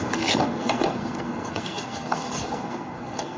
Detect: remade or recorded remade